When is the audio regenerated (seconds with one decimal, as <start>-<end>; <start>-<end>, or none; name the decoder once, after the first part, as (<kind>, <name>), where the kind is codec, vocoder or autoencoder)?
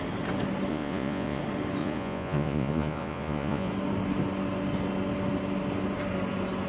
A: 0.7-1.4 (vocoder, Vocos); 1.8-3.7